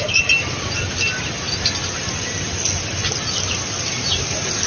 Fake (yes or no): no